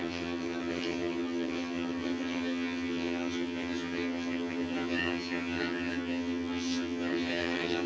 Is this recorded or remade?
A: remade